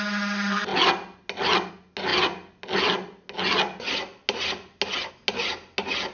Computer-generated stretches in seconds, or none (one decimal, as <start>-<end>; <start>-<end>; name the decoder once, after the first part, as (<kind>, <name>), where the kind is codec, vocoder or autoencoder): none